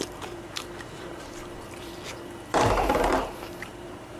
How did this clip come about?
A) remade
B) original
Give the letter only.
A